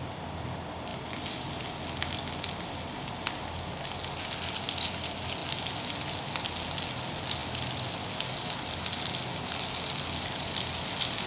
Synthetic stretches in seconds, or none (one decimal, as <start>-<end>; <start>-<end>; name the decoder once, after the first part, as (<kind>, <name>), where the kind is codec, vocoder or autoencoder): none